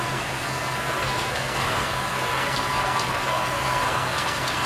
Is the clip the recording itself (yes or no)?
no